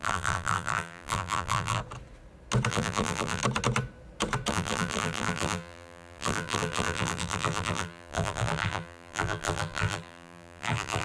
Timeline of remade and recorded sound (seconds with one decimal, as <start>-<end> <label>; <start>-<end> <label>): 0.0-1.8 remade; 1.8-2.7 recorded; 2.7-3.4 remade; 3.4-4.5 recorded; 4.5-11.0 remade